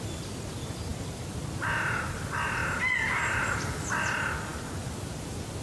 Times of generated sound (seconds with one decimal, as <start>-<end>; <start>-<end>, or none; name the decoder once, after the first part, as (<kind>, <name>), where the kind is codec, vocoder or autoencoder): none